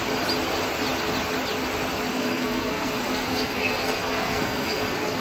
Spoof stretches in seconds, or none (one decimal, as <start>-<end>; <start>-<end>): 2.1-5.2